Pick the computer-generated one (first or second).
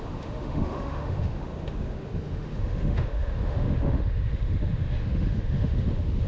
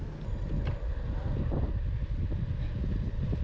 first